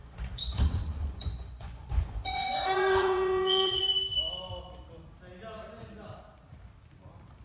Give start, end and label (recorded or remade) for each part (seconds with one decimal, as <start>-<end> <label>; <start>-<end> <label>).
0.0-3.8 remade; 3.8-7.4 recorded